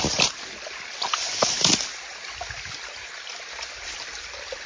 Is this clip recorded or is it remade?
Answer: recorded